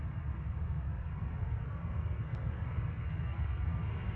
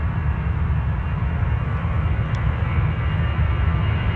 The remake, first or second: first